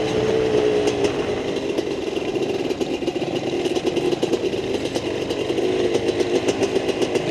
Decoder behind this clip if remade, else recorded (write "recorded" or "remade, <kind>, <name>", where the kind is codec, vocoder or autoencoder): recorded